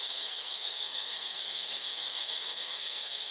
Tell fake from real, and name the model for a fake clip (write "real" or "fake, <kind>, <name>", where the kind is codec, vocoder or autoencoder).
fake, codec, SNAC